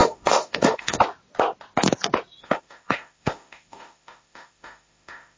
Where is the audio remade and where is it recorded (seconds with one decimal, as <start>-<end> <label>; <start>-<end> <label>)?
0.0-1.0 remade; 1.0-2.4 recorded; 2.4-5.4 remade